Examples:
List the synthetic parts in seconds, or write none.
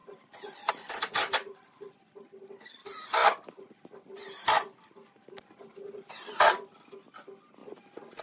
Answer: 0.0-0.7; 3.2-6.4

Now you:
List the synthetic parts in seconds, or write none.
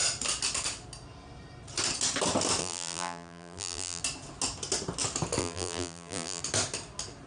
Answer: 2.6-4.0; 5.4-6.4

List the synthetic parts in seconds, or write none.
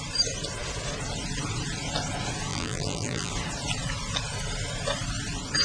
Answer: 2.5-3.3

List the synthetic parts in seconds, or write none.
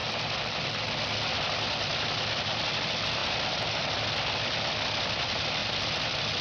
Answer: 0.0-1.0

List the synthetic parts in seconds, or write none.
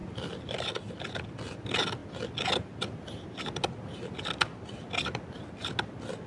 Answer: none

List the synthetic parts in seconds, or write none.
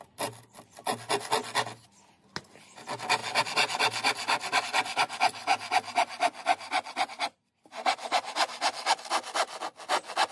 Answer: none